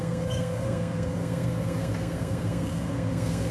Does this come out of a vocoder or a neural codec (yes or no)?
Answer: yes